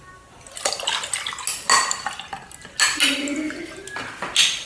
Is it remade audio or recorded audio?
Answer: recorded